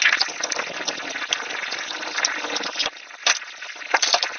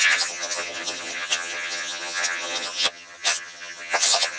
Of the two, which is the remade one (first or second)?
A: second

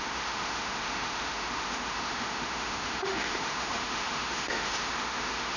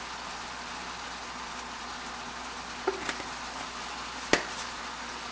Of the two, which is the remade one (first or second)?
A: first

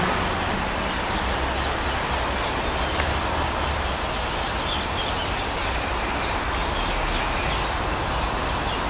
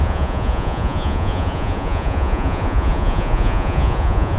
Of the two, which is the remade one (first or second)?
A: second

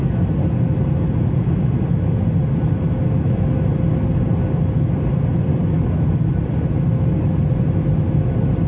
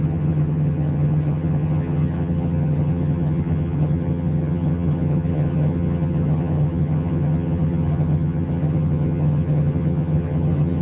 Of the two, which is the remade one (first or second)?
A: second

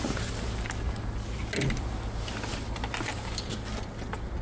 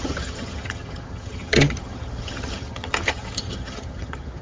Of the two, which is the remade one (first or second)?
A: second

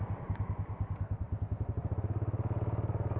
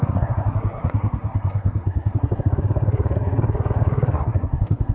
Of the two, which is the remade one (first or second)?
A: second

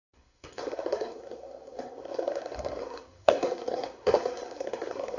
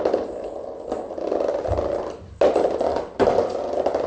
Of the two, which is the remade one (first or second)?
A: first